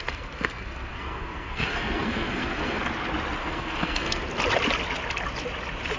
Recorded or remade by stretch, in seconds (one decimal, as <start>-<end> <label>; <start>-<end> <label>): 0.0-2.8 remade; 2.8-3.4 recorded; 3.4-4.2 remade; 4.2-6.0 recorded

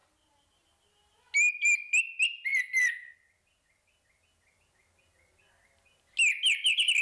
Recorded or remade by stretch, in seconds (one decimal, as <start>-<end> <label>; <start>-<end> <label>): 0.0-7.0 recorded

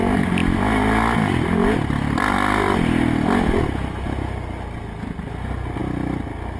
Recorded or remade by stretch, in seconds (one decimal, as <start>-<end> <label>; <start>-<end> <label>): 0.0-6.6 recorded

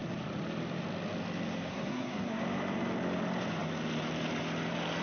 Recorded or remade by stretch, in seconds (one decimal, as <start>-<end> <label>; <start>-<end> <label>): 0.0-1.7 recorded; 1.7-2.4 remade; 2.4-5.0 recorded